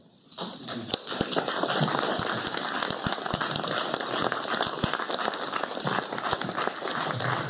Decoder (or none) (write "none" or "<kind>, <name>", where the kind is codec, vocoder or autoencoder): none